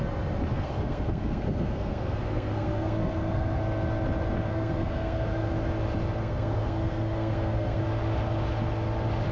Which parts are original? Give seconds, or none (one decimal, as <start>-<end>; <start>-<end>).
0.0-0.5; 3.6-4.5; 5.5-6.2; 7.8-9.3